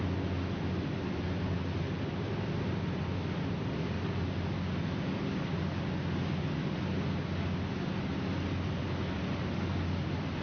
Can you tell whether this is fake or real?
real